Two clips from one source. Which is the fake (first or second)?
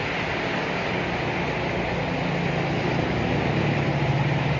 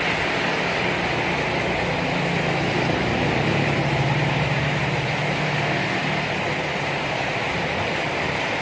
second